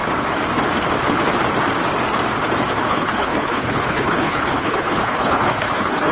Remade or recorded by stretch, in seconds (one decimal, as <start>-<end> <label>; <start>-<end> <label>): 0.0-2.8 recorded; 2.8-6.1 remade

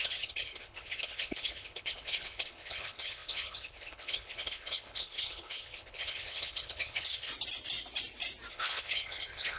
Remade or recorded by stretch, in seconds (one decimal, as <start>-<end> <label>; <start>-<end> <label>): 0.0-7.3 remade; 7.3-8.5 recorded; 8.5-9.6 remade

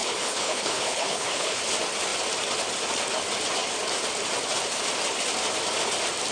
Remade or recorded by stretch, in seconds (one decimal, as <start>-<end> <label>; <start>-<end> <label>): 0.0-1.6 remade; 1.6-6.3 recorded